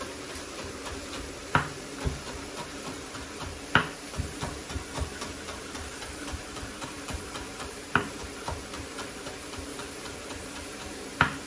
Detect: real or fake fake